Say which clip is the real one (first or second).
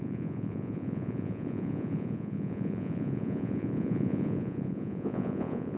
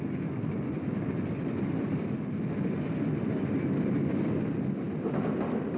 second